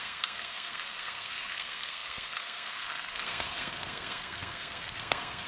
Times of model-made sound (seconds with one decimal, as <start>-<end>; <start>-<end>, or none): 0.0-5.5